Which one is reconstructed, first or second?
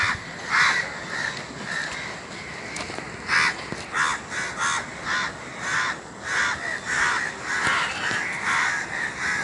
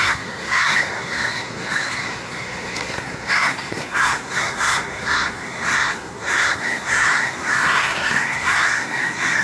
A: second